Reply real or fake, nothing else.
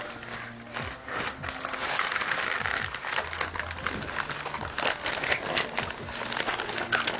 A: real